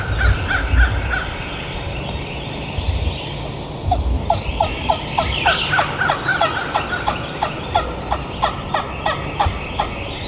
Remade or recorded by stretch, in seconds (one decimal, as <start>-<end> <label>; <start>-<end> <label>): 0.0-10.3 recorded